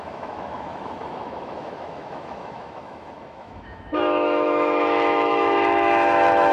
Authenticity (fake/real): fake